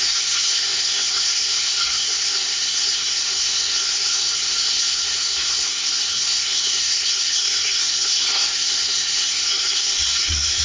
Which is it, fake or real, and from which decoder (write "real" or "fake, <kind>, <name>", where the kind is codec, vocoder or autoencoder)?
fake, codec, SNAC